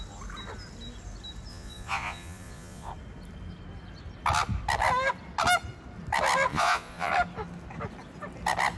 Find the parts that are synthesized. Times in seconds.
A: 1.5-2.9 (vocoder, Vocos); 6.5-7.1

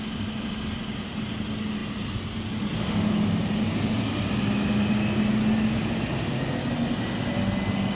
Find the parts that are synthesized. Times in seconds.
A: none

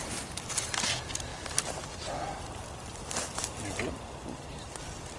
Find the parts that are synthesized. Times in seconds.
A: none

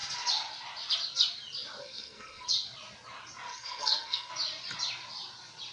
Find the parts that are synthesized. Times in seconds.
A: 1.8-2.5 (codec, SNAC); 3.5-4.3

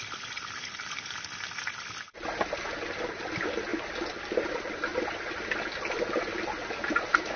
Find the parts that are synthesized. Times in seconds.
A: none

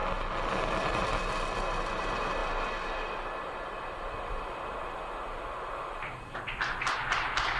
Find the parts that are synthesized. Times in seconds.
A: none

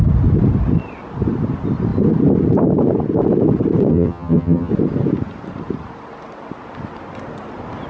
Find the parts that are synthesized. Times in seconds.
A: 3.9-4.7 (vocoder, HiFi-GAN)